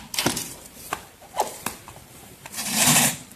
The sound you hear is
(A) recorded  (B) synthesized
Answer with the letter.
B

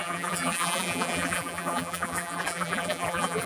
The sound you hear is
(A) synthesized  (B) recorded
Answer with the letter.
A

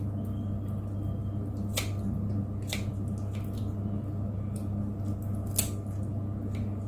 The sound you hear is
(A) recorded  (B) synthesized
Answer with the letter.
A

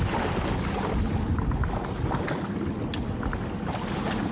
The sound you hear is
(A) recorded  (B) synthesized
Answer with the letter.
A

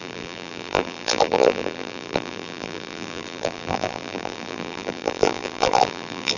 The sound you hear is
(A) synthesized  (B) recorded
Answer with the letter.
A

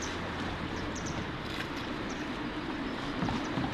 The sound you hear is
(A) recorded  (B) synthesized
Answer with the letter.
B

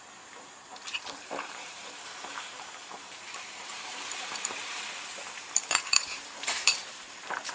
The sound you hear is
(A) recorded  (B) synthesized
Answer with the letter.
B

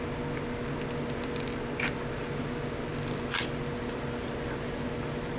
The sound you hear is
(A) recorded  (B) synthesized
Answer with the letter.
A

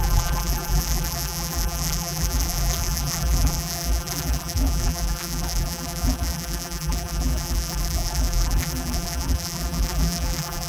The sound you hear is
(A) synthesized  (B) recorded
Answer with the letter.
A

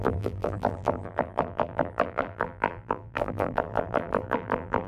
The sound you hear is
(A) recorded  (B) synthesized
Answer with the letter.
B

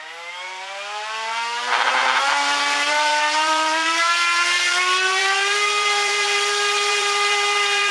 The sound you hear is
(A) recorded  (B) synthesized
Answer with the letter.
B